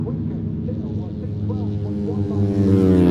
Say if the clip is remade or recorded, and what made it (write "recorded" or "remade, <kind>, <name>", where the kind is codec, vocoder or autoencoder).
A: recorded